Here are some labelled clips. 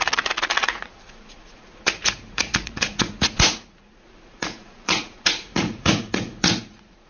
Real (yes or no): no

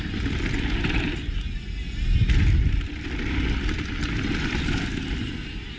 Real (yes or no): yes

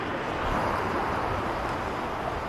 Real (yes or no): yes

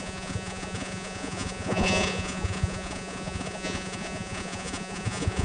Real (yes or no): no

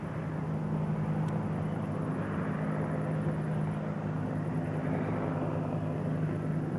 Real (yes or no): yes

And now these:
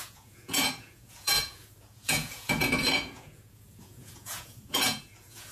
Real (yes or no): no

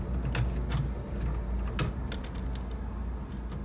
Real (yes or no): yes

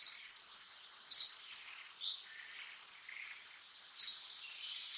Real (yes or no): yes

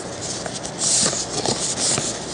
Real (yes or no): yes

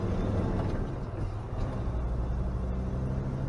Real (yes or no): yes